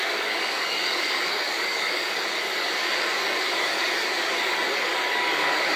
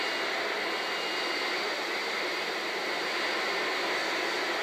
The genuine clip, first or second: second